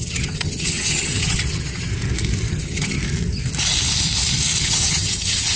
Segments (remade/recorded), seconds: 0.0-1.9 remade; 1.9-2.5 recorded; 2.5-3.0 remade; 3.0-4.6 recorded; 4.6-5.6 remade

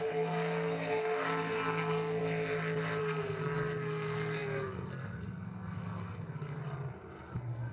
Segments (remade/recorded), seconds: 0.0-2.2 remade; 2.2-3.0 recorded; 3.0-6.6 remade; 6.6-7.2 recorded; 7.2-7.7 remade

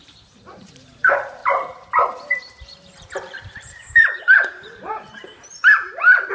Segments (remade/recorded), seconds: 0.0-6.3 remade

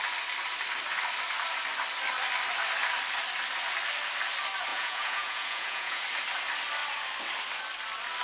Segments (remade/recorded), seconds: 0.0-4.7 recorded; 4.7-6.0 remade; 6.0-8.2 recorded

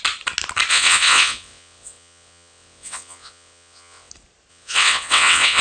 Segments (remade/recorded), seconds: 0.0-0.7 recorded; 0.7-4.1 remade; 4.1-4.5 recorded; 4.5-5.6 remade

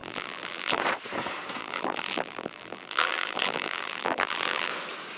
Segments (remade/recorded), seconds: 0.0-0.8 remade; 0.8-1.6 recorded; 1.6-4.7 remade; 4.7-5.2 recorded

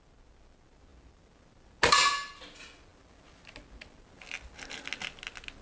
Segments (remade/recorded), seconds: 0.0-5.6 recorded